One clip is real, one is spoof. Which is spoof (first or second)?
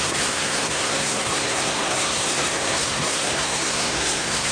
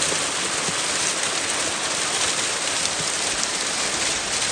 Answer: first